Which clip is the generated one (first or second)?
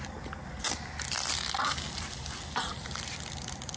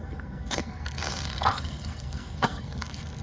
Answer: second